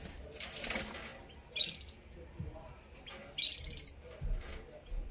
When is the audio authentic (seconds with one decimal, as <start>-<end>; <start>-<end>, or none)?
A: 0.0-5.1